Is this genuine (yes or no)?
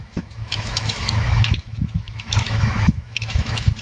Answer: no